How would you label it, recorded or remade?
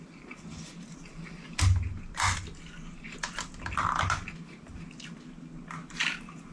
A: recorded